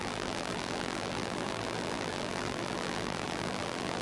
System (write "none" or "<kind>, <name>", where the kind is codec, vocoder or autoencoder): vocoder, BigVGAN v2